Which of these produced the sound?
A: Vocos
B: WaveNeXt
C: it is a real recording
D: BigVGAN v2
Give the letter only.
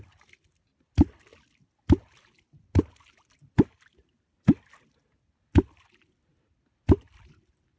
C